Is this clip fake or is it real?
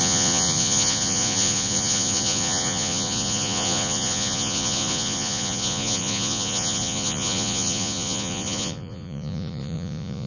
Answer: fake